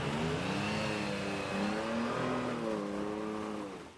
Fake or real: real